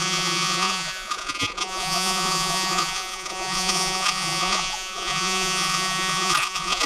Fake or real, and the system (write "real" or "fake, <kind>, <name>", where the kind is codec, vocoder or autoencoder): fake, vocoder, Vocos